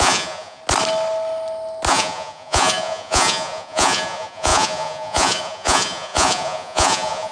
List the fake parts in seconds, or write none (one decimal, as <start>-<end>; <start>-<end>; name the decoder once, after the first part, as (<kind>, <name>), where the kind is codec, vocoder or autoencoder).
0.0-0.6 (vocoder, Vocos); 1.9-7.3